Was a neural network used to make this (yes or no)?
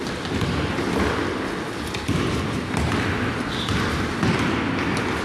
no